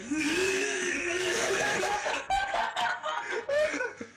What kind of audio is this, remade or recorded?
remade